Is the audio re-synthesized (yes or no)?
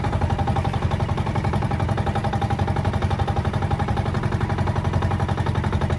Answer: no